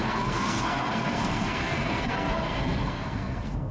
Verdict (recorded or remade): remade